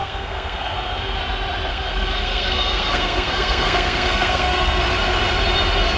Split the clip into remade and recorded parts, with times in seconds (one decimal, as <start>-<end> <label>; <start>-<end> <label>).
0.0-1.2 remade; 1.2-1.7 recorded; 1.7-4.8 remade; 4.8-6.0 recorded